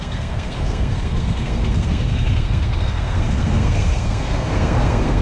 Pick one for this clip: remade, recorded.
remade